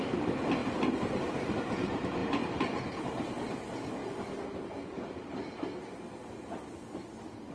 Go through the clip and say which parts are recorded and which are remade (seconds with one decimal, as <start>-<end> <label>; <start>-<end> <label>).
0.0-0.6 remade; 0.6-1.1 recorded; 1.1-4.0 remade; 4.0-4.8 recorded; 4.8-5.4 remade; 5.4-7.5 recorded